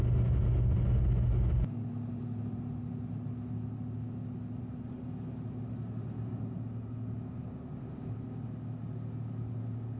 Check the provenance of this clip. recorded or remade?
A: recorded